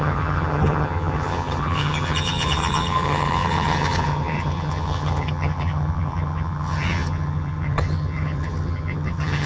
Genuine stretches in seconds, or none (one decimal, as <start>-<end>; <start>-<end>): none